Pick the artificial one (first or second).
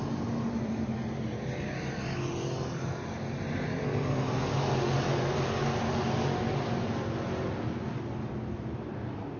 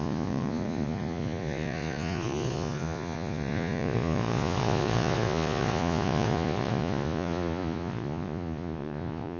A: second